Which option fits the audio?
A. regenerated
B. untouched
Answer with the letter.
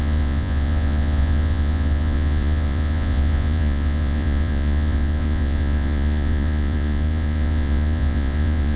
A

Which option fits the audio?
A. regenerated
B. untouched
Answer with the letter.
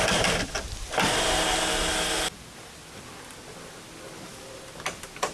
B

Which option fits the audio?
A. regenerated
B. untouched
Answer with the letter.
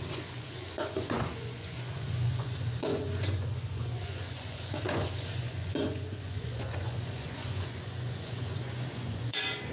A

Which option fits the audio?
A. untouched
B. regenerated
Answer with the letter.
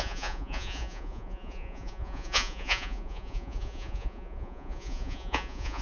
B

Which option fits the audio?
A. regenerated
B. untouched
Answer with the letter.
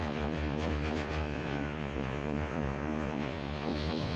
A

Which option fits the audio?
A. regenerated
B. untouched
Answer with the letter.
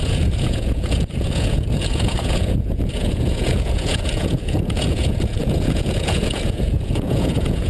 A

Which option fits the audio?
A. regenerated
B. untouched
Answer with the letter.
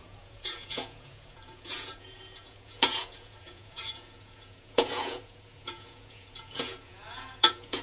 A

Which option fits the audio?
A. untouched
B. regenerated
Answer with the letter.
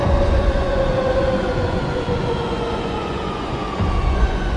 B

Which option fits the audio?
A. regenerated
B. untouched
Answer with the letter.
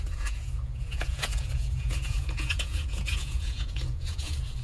A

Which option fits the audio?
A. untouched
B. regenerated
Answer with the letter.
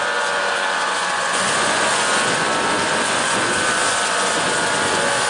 B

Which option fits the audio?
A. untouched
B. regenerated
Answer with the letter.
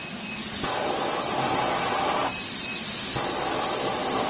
A